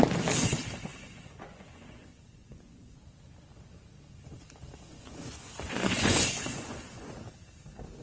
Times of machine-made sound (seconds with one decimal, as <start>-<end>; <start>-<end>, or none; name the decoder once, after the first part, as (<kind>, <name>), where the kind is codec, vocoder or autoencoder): 0.9-3.0 (vocoder, Vocos); 4.9-7.1